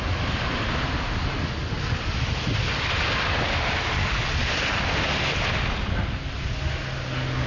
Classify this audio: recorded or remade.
recorded